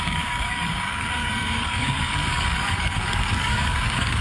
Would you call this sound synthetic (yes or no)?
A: yes